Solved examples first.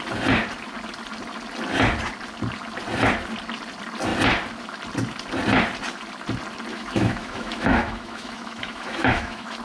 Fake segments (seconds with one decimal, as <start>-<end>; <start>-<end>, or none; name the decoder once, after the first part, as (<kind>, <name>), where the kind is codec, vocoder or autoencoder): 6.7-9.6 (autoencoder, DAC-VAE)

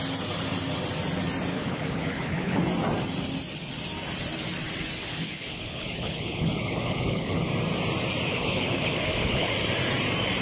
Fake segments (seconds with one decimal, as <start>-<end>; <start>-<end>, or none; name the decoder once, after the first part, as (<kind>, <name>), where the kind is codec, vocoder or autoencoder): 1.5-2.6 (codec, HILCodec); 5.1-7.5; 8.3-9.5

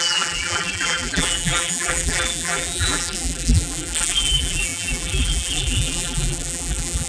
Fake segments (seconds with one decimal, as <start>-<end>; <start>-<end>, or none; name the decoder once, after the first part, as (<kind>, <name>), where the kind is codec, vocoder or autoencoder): 0.0-7.1 (vocoder, BigVGAN v2)

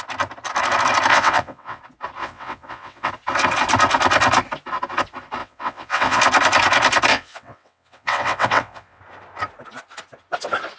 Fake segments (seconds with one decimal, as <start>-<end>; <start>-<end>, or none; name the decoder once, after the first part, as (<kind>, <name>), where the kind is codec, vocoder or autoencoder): 1.1-1.8 (vocoder, WaveNeXt); 2.2-3.1; 5.4-6.2; 7.1-9.0